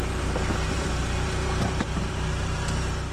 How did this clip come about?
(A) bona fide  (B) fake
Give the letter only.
B